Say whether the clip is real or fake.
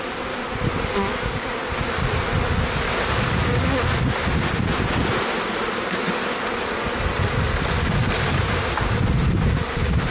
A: real